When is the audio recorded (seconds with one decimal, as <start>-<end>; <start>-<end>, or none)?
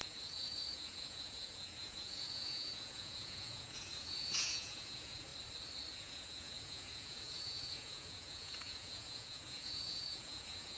5.3-5.9